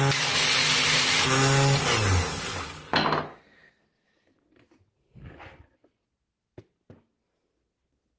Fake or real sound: real